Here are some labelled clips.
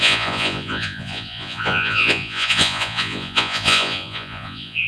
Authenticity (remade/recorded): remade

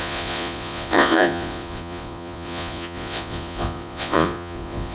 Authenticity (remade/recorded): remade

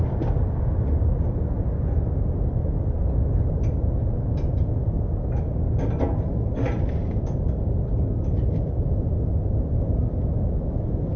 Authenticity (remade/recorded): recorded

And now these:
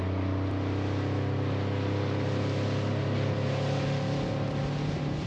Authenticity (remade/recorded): recorded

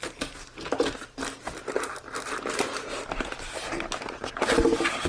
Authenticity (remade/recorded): recorded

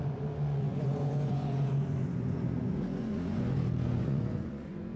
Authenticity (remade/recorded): remade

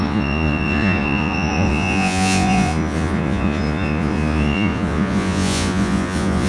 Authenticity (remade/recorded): remade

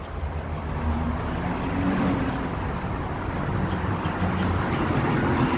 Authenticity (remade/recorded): recorded